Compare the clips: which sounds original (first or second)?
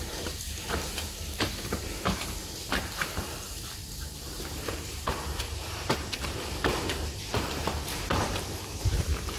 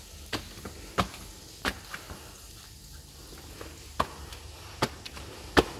second